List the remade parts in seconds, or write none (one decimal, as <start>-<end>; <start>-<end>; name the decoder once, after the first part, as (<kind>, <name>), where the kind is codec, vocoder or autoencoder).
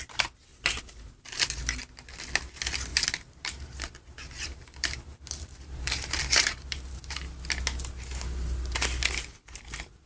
0.5-1.4 (vocoder, BigVGAN v2); 2.9-7.3